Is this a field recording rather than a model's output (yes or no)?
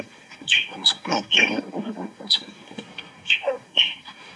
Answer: no